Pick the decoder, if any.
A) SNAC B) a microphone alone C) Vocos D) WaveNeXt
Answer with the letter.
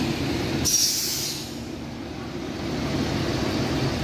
B